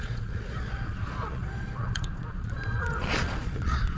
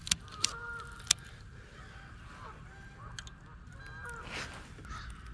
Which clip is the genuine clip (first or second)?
second